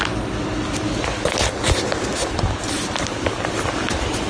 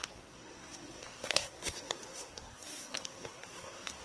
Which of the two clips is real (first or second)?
first